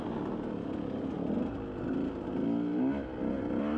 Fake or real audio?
real